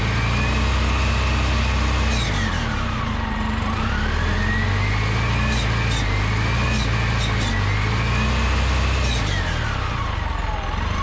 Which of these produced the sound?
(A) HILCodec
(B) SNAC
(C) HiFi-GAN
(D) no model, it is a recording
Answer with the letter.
D